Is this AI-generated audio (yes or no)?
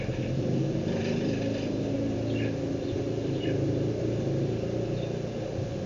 no